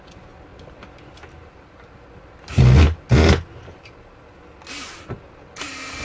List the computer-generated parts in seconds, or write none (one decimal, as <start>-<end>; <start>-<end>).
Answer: none